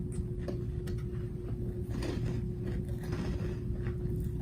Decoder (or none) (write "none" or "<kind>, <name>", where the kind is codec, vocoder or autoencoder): none